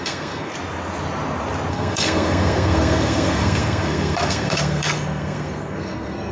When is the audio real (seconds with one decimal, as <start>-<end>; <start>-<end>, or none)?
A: 0.5-1.7